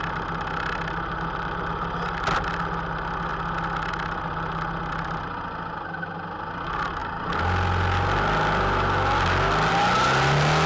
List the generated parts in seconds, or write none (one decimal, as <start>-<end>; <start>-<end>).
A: none